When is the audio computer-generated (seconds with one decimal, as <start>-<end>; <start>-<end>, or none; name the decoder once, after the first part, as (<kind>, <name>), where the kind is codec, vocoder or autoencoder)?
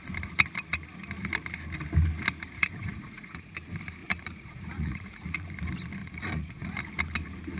2.6-3.5 (vocoder, Vocos); 4.0-5.5; 6.0-6.8